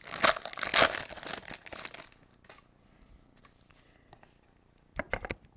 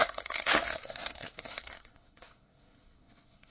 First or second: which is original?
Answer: first